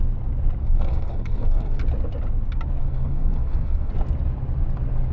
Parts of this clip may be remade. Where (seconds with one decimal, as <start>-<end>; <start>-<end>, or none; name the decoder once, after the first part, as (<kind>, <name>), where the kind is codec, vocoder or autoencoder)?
0.6-1.8 (codec, SNAC); 2.8-3.9

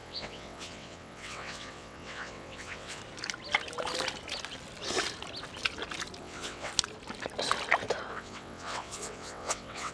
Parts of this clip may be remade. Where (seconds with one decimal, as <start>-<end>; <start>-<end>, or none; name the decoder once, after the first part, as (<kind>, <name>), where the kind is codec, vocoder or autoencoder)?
0.0-3.0 (vocoder, WaveNeXt); 6.2-6.7; 8.1-9.9